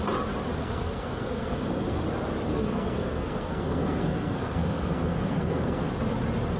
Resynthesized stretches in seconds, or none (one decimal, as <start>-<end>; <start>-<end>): 0.6-2.0; 2.5-5.8